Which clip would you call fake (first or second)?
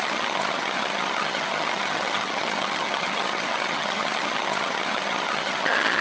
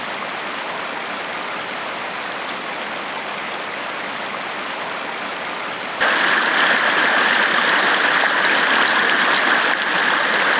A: first